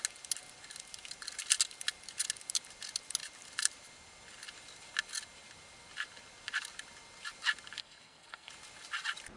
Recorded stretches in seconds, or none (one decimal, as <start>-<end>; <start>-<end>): 0.0-7.8; 8.5-9.4